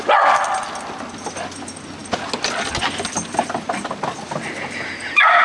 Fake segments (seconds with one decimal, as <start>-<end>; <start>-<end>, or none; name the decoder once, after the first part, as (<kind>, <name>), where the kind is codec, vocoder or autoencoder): none